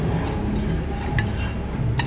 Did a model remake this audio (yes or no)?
no